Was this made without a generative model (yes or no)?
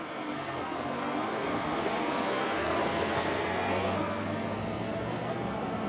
no